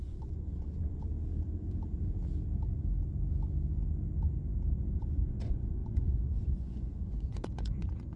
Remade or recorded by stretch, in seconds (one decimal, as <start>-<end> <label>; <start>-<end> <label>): 0.0-1.1 remade; 1.1-5.0 recorded; 5.0-8.2 remade